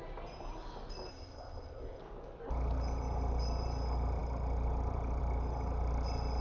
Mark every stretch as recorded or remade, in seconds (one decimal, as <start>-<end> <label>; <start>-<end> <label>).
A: 0.0-1.1 recorded; 1.1-2.0 remade; 2.0-6.4 recorded